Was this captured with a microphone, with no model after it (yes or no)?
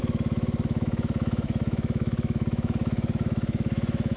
no